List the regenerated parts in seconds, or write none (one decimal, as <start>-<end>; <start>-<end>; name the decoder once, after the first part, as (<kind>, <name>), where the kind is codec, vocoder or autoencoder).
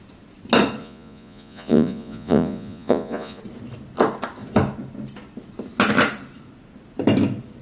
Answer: 0.8-3.4 (vocoder, Vocos)